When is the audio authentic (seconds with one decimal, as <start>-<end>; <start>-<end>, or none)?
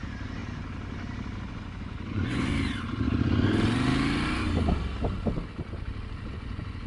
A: 0.4-1.5; 2.5-6.3